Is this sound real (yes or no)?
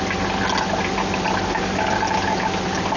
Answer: yes